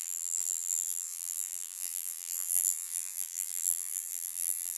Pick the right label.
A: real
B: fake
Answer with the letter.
B